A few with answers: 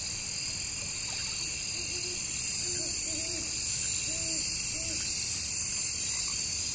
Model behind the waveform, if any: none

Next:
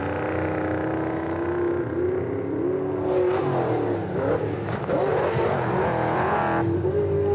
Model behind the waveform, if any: none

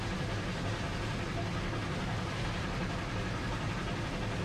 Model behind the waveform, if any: none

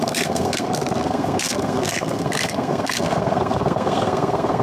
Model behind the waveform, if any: codec, SNAC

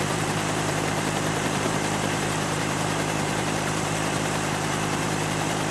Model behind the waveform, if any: vocoder, BigVGAN v2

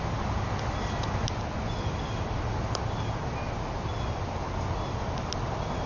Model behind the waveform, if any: none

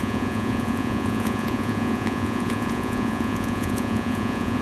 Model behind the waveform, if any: vocoder, Vocos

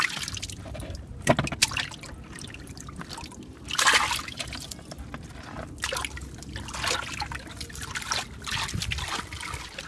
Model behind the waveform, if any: none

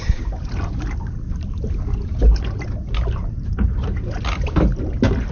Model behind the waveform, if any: none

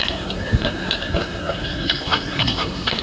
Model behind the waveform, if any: codec, SNAC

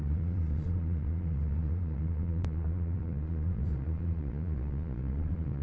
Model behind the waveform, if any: vocoder, Vocos